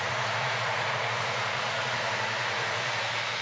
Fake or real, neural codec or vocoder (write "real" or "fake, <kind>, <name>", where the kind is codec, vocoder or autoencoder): fake, vocoder, Vocos